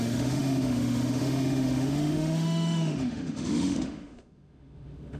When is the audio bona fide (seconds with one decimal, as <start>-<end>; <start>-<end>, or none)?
none